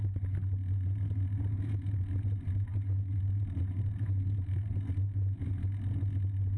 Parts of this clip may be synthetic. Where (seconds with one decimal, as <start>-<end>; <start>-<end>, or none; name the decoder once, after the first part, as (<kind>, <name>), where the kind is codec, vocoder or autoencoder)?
none